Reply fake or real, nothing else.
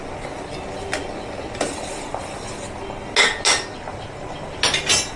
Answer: real